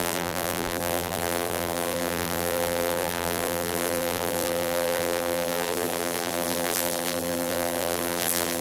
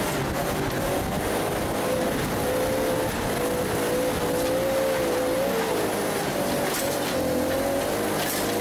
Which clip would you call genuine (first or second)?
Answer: second